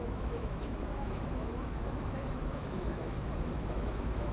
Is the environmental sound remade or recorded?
remade